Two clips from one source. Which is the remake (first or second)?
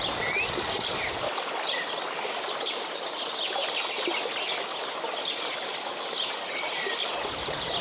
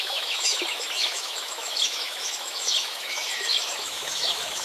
second